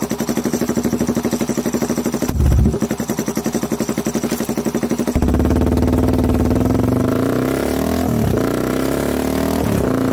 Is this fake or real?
real